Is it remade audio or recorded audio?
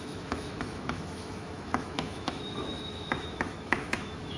remade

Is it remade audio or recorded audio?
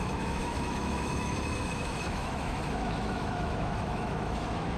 remade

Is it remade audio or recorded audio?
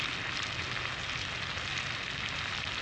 recorded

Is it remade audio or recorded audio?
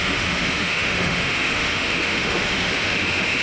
remade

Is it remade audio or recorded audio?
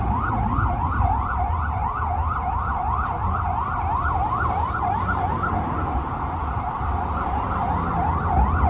recorded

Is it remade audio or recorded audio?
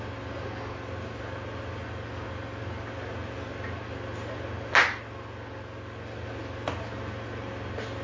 recorded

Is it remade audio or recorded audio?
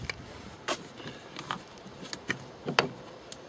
recorded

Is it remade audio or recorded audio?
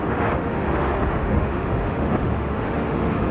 remade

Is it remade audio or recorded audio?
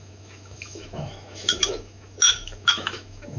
remade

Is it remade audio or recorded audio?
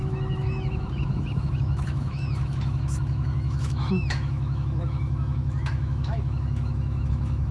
remade